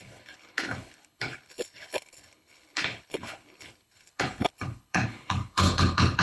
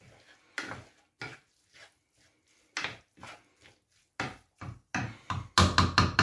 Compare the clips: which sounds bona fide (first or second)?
second